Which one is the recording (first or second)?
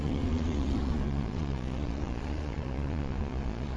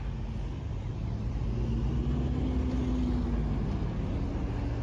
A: second